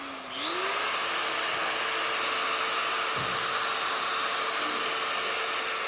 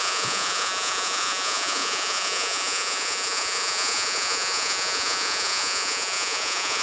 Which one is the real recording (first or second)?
first